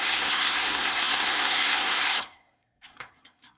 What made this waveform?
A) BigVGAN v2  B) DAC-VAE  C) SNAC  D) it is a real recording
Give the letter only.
C